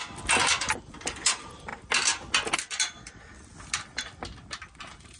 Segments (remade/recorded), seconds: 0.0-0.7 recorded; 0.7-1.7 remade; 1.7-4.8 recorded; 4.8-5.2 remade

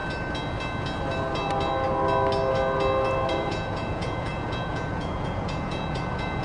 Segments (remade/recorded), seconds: 0.0-3.3 recorded; 3.3-6.4 remade

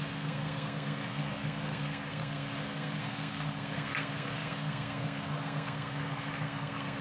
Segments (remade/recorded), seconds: 0.0-7.0 remade

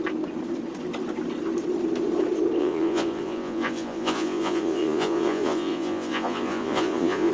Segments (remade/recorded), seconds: 0.0-2.6 recorded; 2.6-7.3 remade

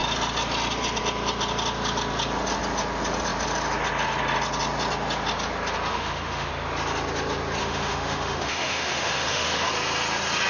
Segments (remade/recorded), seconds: 0.0-5.9 recorded; 5.9-6.5 remade; 6.5-7.6 recorded; 7.6-9.7 remade; 9.7-10.5 recorded

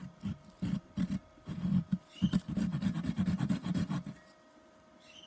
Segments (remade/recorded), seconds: 0.0-5.3 recorded